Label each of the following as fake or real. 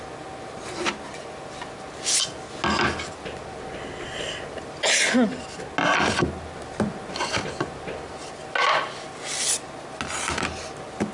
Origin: real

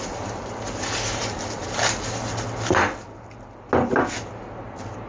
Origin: real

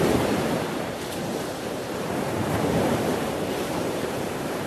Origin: fake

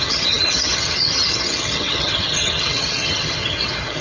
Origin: fake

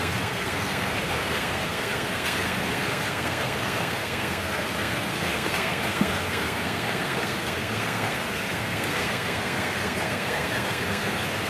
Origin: fake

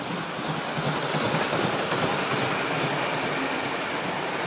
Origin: real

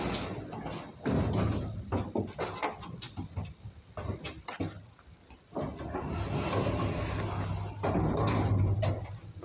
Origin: real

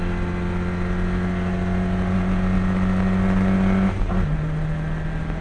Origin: real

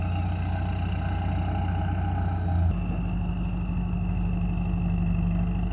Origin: real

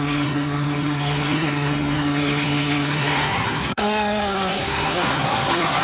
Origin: fake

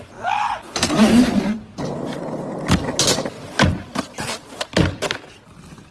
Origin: real